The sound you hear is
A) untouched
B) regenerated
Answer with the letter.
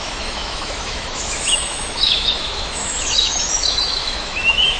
B